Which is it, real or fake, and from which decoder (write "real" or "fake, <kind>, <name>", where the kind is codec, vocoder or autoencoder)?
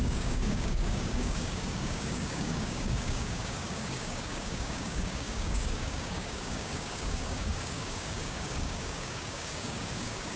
fake, codec, DAC